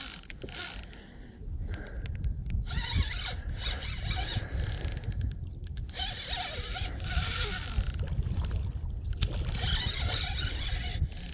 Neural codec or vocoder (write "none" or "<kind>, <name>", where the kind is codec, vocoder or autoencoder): none